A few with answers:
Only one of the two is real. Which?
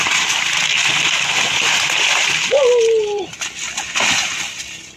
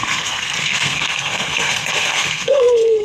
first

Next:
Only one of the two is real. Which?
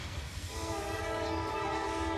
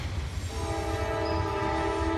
second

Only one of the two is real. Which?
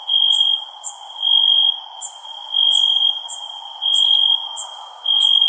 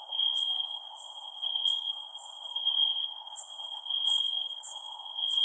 first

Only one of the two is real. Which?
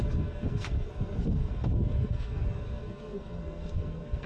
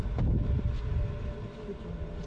second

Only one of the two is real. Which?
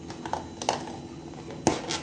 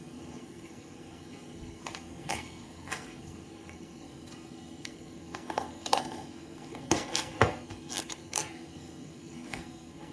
first